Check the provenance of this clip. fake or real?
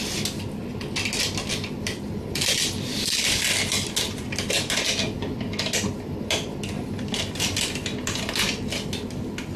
real